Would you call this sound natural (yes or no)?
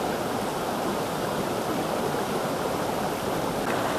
yes